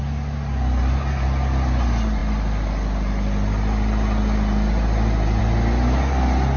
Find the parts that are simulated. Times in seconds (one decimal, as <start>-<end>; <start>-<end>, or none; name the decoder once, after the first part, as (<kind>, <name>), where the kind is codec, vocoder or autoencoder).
none